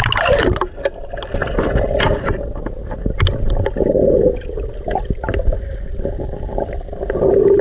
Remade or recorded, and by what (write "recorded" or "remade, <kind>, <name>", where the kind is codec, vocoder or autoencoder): recorded